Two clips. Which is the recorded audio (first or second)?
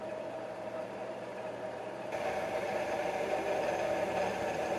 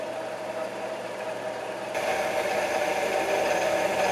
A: second